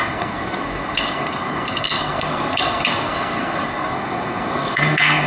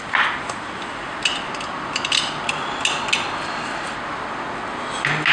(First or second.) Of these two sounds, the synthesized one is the first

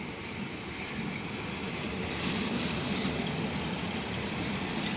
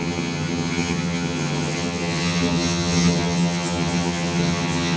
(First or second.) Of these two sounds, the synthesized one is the second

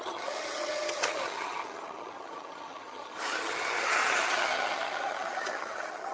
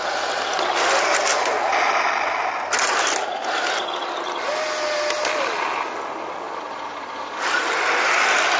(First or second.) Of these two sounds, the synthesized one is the first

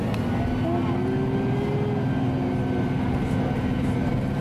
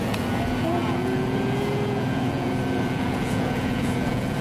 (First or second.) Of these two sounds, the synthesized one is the second